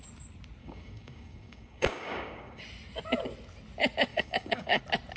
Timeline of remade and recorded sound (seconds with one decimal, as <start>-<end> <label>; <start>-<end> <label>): 0.0-0.6 recorded; 0.6-2.6 remade; 2.6-4.1 recorded; 4.1-4.8 remade; 4.8-5.2 recorded

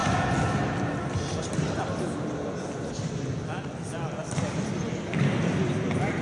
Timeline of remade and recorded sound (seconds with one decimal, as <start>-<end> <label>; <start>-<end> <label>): 0.0-6.2 recorded